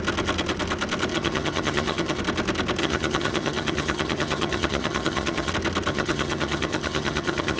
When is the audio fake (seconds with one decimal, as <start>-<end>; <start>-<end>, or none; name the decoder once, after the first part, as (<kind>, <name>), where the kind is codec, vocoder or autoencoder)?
1.1-2.2 (vocoder, HiFi-GAN); 2.8-5.5; 5.9-7.6